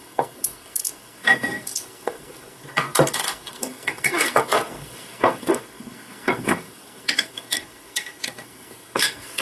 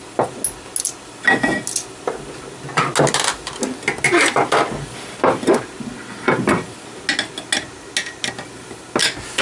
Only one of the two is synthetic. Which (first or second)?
first